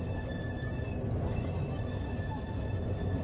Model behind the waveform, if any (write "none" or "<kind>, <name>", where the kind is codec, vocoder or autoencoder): none